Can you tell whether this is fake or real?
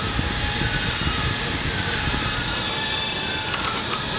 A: real